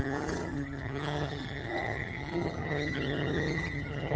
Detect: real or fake fake